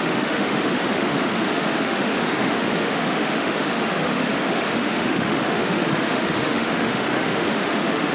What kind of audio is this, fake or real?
fake